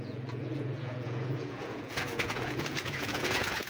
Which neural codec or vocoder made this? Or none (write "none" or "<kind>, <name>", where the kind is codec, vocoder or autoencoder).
vocoder, Vocos